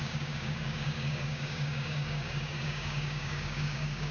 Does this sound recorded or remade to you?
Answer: remade